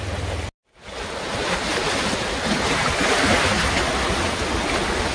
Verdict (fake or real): real